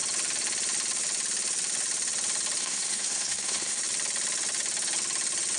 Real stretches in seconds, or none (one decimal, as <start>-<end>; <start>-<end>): 0.0-2.6; 3.8-5.6